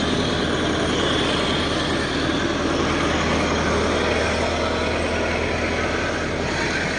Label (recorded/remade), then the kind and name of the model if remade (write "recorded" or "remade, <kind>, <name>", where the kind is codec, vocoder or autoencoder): recorded